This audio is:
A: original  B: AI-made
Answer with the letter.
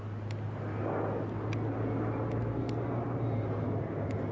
A